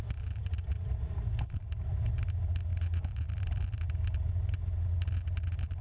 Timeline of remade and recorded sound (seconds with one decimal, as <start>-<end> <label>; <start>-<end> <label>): 0.0-5.8 recorded